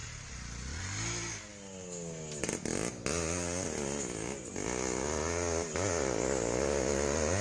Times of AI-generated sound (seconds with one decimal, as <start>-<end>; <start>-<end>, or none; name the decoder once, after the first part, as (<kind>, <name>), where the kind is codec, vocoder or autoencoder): none